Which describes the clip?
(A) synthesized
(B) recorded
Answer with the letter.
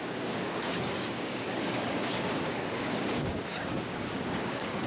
A